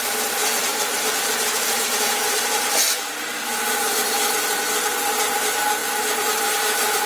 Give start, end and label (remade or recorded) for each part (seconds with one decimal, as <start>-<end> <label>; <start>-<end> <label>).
0.0-0.7 recorded; 0.7-4.1 remade; 4.1-5.8 recorded; 5.8-7.1 remade